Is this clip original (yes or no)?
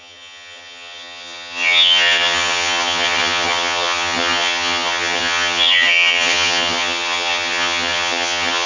no